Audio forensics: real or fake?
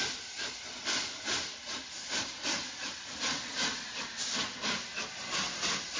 real